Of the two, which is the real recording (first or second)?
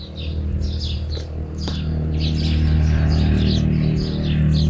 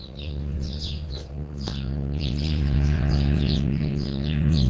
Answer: first